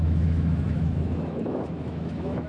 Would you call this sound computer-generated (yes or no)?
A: yes